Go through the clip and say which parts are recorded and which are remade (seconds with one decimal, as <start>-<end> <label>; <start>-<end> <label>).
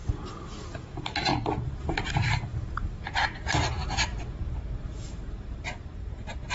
0.0-0.7 recorded; 0.7-1.3 remade; 1.3-1.8 recorded; 1.8-2.5 remade; 2.5-3.0 recorded; 3.0-6.5 remade